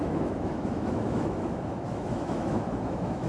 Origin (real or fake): fake